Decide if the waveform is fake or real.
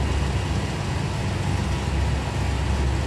real